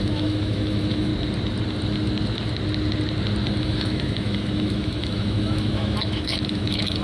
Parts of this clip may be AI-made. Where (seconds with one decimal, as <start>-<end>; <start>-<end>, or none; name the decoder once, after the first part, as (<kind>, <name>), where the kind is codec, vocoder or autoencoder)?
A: 0.0-1.1 (autoencoder, DAC-VAE); 3.6-7.0